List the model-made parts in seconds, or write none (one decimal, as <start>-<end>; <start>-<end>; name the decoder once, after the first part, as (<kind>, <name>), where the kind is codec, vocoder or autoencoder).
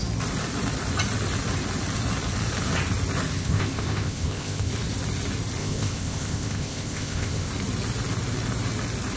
3.4-4.7 (codec, ZipCodec); 5.6-7.5